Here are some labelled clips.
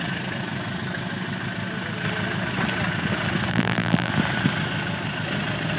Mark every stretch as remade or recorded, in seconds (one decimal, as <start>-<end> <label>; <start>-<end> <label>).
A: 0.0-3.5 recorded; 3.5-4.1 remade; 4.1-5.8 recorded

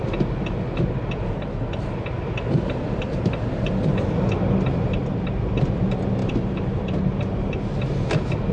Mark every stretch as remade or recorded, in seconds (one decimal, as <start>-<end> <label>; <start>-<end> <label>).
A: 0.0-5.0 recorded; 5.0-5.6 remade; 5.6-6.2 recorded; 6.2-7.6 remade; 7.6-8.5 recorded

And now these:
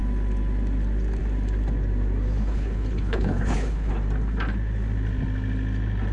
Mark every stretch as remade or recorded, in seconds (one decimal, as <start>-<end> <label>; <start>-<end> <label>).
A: 0.0-2.4 recorded; 2.4-3.9 remade; 3.9-6.1 recorded